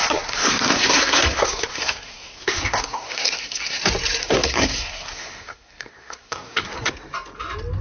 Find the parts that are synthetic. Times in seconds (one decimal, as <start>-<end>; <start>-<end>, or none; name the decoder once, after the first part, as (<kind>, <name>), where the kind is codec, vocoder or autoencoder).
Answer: 0.0-3.8 (codec, SNAC); 4.2-6.9